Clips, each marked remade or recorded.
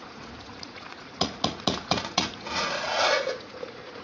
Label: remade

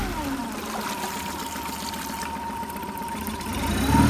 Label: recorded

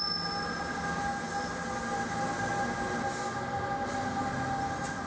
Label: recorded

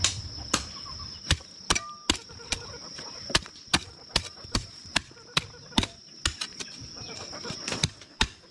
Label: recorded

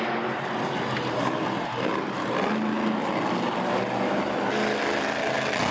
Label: recorded